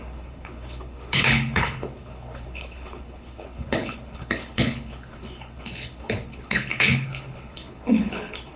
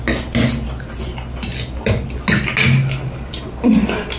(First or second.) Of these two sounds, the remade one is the first